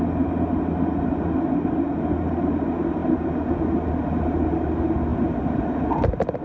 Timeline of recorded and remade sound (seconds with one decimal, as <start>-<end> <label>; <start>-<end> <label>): 0.0-5.1 recorded; 5.1-5.9 remade; 5.9-6.4 recorded